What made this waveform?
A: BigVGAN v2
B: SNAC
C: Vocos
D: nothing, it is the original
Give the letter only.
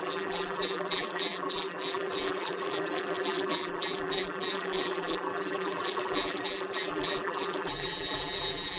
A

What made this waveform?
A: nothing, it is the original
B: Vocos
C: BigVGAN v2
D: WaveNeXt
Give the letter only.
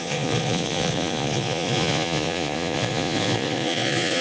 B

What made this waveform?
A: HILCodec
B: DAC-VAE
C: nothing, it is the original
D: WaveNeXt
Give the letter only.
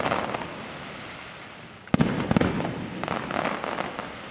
C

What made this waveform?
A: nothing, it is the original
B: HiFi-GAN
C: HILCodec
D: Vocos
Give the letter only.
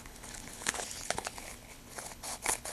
C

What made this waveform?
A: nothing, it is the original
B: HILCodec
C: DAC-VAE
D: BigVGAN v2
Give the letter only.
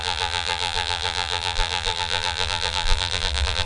D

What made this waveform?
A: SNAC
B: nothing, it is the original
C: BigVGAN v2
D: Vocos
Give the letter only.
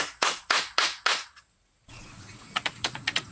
D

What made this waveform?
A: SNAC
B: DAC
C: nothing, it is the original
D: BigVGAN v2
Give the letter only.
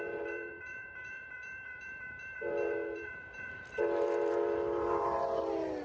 D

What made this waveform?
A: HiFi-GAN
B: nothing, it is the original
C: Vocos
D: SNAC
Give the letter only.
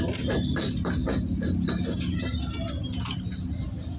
B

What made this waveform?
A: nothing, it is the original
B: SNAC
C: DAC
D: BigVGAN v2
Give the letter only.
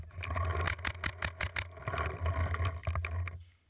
A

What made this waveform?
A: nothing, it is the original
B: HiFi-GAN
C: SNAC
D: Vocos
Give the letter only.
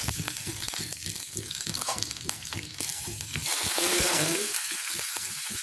C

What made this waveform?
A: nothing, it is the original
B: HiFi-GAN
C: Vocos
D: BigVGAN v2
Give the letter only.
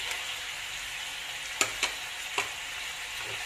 A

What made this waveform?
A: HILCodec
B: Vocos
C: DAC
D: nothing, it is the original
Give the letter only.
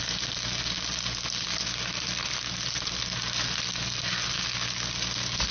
D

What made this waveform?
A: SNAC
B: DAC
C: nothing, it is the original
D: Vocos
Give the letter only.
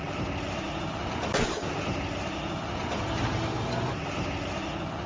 C